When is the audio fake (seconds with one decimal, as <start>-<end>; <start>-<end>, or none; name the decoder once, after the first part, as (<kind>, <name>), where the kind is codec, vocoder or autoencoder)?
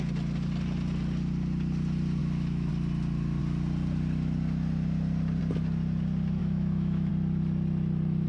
2.2-2.7 (autoencoder, DAC-VAE); 6.4-7.1